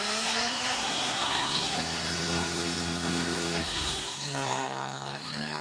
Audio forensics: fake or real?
fake